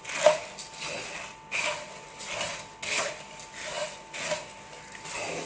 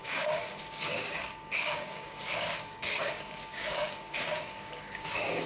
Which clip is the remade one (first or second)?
second